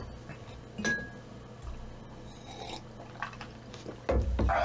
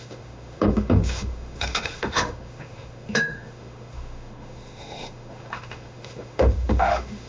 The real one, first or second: first